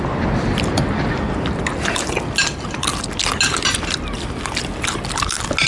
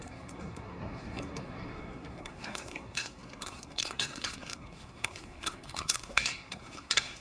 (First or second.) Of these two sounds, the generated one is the second